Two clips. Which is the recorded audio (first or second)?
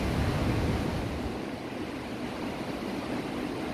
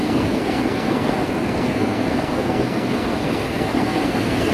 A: first